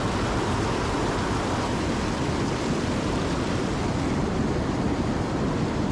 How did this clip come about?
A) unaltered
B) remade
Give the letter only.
A